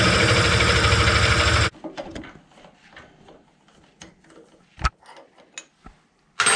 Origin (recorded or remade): recorded